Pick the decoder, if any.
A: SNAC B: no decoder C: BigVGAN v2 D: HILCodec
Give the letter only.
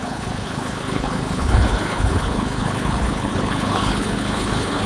D